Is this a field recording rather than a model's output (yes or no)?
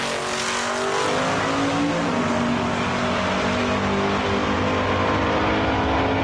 yes